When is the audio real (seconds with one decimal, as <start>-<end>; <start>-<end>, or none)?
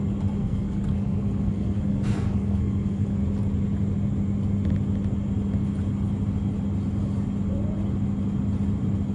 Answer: 0.0-0.4; 3.2-9.1